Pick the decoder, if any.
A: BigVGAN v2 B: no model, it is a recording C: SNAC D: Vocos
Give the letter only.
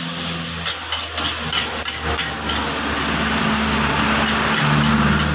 B